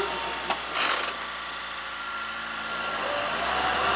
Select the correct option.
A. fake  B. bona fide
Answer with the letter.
B